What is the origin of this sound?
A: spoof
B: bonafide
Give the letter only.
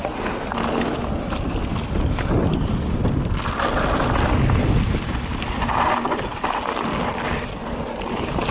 B